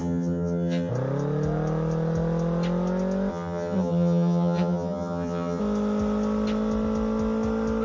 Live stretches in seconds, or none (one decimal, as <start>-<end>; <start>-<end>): 0.9-3.3; 5.6-7.8